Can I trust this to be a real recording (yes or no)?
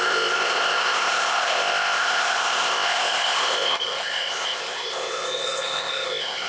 no